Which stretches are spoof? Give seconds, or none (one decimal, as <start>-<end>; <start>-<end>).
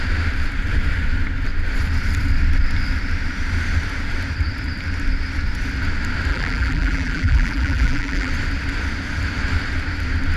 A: 6.3-8.3